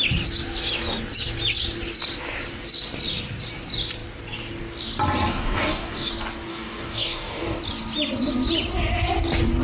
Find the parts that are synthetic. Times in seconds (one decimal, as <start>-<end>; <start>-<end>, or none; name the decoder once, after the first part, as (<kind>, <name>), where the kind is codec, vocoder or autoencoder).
5.3-6.1 (codec, DAC); 6.5-7.6